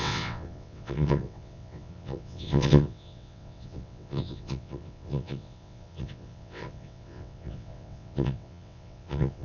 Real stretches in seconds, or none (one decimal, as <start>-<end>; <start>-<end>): none